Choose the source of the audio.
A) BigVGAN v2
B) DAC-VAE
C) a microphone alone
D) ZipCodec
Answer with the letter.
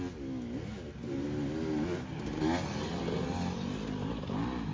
C